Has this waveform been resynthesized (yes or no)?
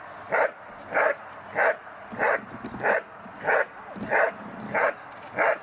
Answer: no